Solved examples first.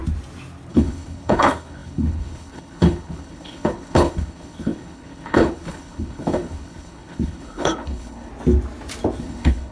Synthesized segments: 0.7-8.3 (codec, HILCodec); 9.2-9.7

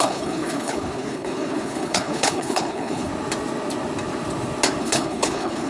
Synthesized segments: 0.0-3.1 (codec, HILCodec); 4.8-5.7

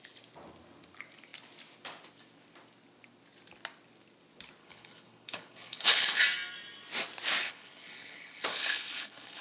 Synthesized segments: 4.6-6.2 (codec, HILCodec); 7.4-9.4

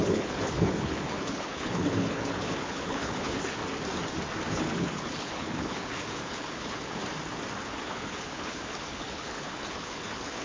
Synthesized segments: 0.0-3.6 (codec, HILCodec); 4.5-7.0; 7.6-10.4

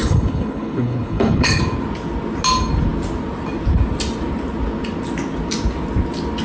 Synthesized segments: 0.0-1.6 (codec, HILCodec)